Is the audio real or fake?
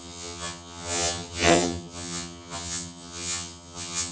fake